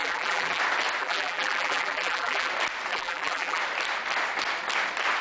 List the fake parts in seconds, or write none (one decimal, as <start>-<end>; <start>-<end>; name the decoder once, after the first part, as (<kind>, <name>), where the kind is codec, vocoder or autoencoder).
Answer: 0.0-0.6 (vocoder, BigVGAN v2); 1.0-2.5; 2.9-3.6